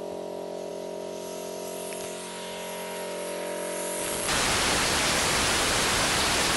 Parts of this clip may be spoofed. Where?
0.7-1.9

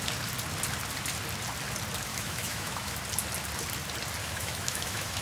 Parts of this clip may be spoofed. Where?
2.1-3.0; 4.2-5.2